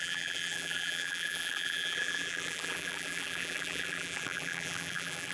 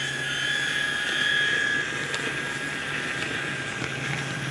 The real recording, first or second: second